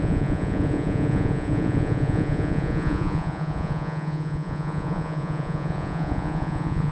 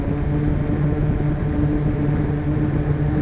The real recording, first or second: second